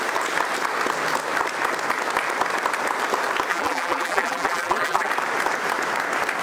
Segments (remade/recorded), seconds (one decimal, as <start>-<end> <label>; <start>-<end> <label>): 0.0-3.5 recorded; 3.5-5.1 remade; 5.1-6.4 recorded